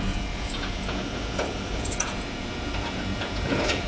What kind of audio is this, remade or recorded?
remade